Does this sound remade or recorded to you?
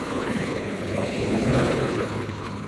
remade